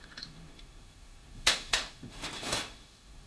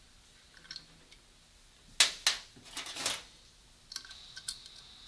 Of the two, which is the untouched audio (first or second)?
second